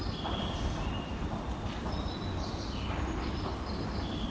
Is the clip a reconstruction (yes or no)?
no